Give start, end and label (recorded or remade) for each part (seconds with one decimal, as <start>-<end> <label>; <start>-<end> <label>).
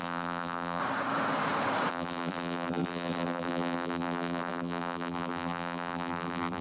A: 0.0-0.8 remade; 0.8-1.9 recorded; 1.9-6.6 remade